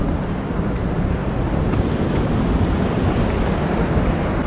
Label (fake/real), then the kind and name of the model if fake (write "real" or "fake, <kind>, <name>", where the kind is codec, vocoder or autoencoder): real